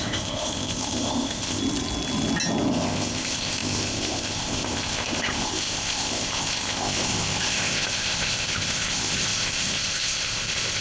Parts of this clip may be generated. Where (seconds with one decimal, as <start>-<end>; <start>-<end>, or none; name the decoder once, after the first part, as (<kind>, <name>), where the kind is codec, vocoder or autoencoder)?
0.0-1.6 (codec, ZipCodec); 2.7-10.8